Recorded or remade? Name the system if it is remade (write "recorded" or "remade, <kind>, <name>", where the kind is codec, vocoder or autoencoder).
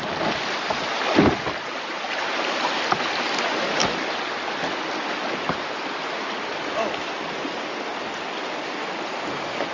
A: recorded